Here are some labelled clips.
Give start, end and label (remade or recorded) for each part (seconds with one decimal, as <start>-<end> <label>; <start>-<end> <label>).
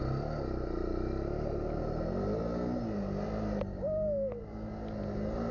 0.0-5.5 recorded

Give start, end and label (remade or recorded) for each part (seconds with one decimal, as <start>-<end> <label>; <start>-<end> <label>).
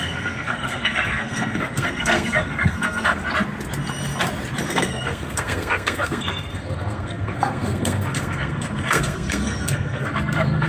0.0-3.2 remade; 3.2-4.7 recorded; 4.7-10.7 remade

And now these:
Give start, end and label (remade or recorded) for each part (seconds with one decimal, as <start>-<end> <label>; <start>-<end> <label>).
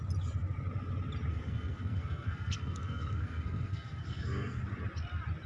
0.0-1.3 recorded; 1.3-4.6 remade; 4.6-5.5 recorded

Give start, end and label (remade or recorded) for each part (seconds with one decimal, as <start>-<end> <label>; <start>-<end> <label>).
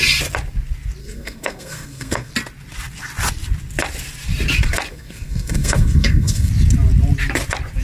0.0-1.0 recorded; 1.0-2.3 remade; 2.3-4.9 recorded; 4.9-6.5 remade; 6.5-7.8 recorded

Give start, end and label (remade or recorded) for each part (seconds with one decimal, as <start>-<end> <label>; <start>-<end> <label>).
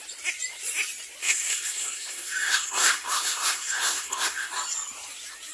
0.0-1.2 recorded; 1.2-4.5 remade; 4.5-5.5 recorded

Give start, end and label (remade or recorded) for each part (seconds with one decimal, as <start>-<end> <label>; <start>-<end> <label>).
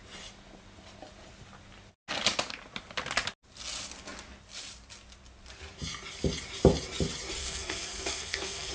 0.0-7.4 recorded; 7.4-8.7 remade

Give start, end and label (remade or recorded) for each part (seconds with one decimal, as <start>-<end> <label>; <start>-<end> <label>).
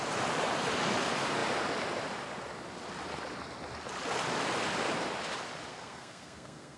0.0-5.7 recorded; 5.7-6.8 remade